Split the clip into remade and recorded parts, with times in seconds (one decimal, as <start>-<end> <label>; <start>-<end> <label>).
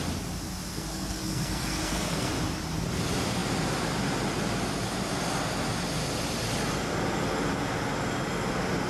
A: 0.0-0.7 recorded; 0.7-2.3 remade; 2.3-8.9 recorded